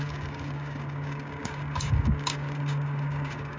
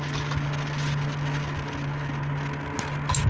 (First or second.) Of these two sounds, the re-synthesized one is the first